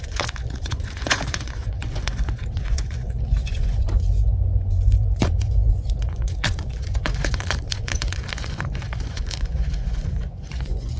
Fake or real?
fake